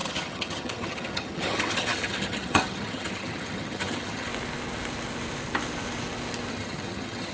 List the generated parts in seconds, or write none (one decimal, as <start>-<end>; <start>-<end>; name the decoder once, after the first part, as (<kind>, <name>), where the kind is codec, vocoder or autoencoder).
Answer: 0.0-4.3 (vocoder, HiFi-GAN); 6.5-7.3